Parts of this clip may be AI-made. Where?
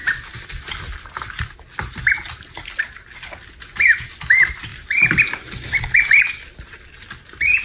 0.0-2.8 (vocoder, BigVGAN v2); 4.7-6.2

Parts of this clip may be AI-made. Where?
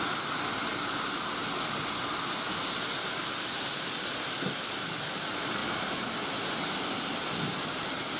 none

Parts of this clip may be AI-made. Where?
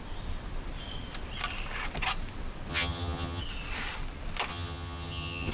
2.7-3.4 (vocoder, HiFi-GAN); 4.5-5.5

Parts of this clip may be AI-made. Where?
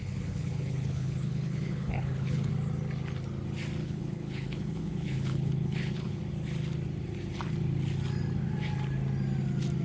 0.0-2.5 (codec, HILCodec); 3.8-6.2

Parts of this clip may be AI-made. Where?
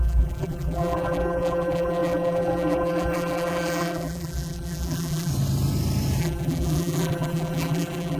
0.0-5.3 (vocoder, BigVGAN v2); 6.2-8.2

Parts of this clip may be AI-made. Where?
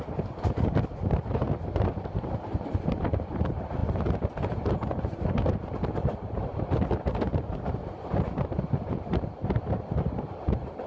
0.0-10.9 (vocoder, BigVGAN v2)